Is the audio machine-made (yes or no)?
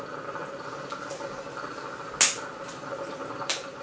no